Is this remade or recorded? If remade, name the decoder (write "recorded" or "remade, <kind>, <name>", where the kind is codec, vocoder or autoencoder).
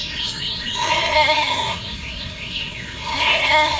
remade, codec, SNAC